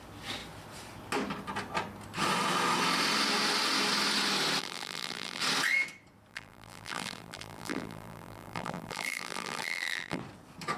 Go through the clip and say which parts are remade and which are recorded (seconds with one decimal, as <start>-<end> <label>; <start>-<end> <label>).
0.0-4.6 recorded; 4.6-5.4 remade; 5.4-6.3 recorded; 6.3-10.2 remade; 10.2-10.8 recorded